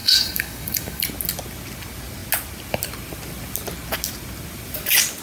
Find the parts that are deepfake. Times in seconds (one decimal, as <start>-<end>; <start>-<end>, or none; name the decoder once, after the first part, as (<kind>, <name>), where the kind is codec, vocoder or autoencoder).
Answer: 0.0-1.0 (codec, DAC)